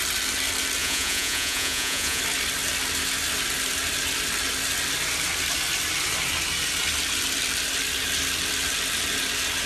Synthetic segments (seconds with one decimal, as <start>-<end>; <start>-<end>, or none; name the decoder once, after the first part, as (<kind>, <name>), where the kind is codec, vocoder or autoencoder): 0.8-2.2 (vocoder, Vocos)